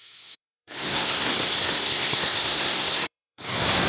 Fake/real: fake